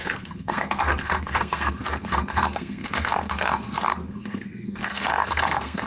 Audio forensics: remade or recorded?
remade